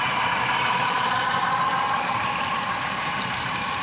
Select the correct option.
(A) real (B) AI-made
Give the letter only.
B